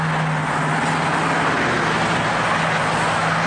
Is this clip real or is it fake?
real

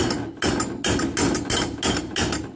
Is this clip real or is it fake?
real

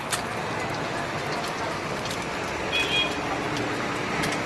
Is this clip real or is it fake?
real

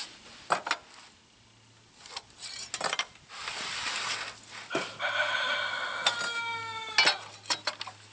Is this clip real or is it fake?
real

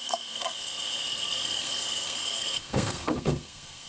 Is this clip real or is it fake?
fake